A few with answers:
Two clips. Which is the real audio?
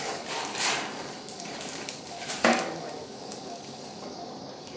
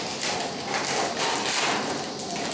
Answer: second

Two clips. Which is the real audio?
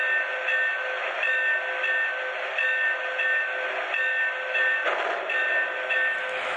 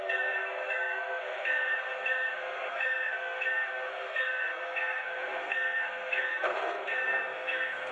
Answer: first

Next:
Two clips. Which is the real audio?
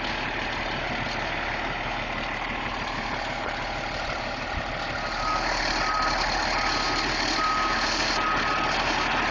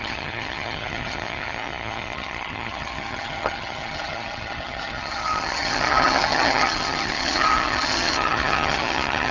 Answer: first